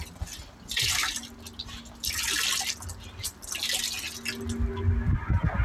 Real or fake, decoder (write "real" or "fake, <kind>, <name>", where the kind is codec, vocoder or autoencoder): real